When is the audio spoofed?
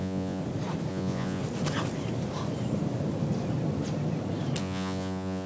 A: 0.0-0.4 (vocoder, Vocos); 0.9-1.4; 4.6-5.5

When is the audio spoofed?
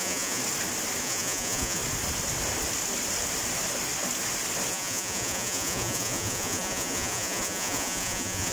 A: 0.0-0.4 (vocoder, Vocos); 1.0-1.8; 4.7-8.5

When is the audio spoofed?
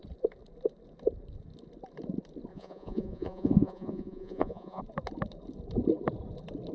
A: 2.5-4.8 (vocoder, Vocos)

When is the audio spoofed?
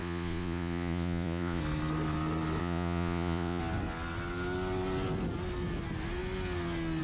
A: 0.0-1.6 (vocoder, Vocos); 2.6-3.6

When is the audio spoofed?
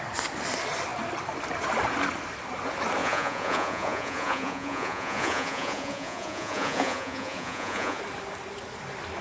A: 3.0-8.0 (vocoder, Vocos)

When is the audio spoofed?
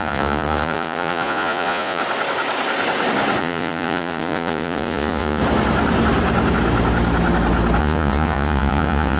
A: 0.0-2.0 (vocoder, Vocos); 3.4-5.4; 7.8-9.2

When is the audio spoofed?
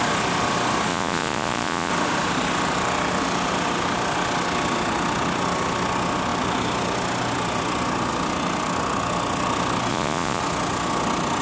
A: 0.9-1.9 (vocoder, Vocos); 9.9-10.4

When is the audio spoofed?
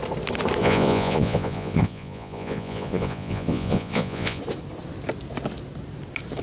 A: 0.6-4.4 (vocoder, Vocos)